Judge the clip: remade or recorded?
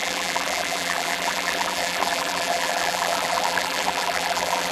remade